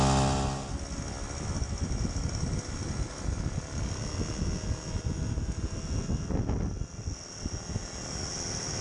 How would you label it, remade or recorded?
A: recorded